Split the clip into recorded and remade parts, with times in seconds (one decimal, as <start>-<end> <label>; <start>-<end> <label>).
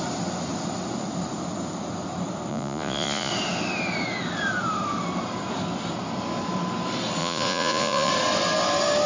0.0-2.5 recorded; 2.5-3.3 remade; 3.3-7.2 recorded; 7.2-8.1 remade; 8.1-9.1 recorded